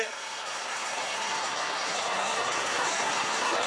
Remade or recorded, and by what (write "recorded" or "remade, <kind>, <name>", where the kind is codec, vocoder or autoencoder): remade, codec, SNAC